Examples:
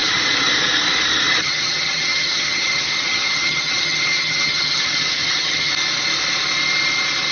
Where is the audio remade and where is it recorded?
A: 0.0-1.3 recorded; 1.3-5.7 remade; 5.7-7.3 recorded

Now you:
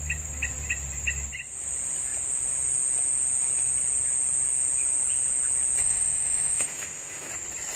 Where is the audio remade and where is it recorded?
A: 0.0-5.8 recorded; 5.8-7.3 remade; 7.3-7.8 recorded

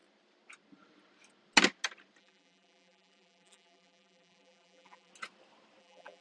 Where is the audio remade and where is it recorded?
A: 0.0-2.2 recorded; 2.2-5.1 remade; 5.1-5.8 recorded; 5.8-6.2 remade

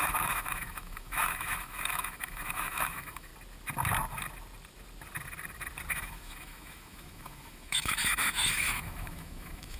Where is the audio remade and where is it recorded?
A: 0.0-3.3 remade; 3.3-5.9 recorded; 5.9-9.8 remade

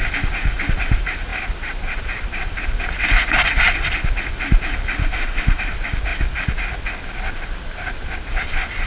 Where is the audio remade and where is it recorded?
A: 0.0-5.0 recorded; 5.0-5.6 remade; 5.6-8.9 recorded

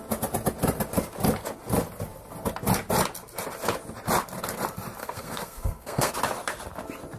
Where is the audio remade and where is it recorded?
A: 0.0-5.0 recorded; 5.0-6.1 remade; 6.1-7.2 recorded